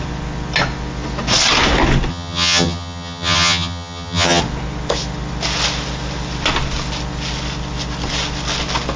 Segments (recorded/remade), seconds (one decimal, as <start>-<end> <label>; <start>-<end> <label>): 0.0-2.1 recorded; 2.1-4.4 remade; 4.4-9.0 recorded

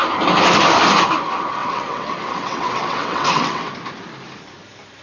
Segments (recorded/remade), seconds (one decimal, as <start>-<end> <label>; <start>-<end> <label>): 0.0-1.6 recorded; 1.6-3.7 remade; 3.7-5.0 recorded

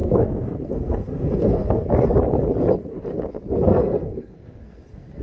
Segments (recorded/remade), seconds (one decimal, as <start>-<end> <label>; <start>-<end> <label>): 0.0-1.9 remade; 1.9-3.7 recorded; 3.7-5.2 remade

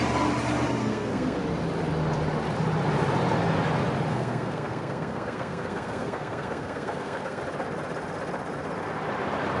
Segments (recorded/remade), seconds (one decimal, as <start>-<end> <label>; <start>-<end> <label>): 0.0-0.8 recorded; 0.8-1.4 remade; 1.4-4.1 recorded; 4.1-7.4 remade; 7.4-9.6 recorded

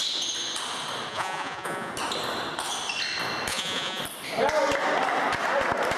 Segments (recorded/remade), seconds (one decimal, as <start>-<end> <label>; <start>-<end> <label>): 0.0-1.1 recorded; 1.1-1.9 remade; 1.9-3.5 recorded; 3.5-4.0 remade; 4.0-6.0 recorded